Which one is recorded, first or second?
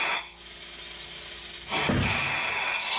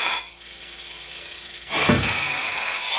first